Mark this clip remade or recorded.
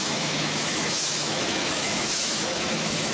remade